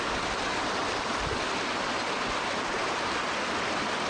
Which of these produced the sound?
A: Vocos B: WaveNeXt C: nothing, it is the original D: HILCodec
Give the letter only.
C